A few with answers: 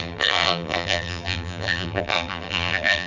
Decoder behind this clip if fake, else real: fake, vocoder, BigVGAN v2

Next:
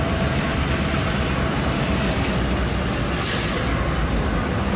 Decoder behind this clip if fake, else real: real